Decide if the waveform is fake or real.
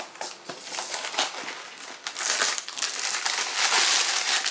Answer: real